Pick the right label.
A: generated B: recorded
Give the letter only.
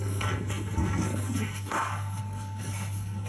A